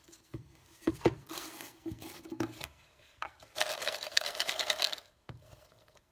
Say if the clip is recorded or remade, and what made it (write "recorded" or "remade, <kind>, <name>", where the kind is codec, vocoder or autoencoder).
remade, codec, SNAC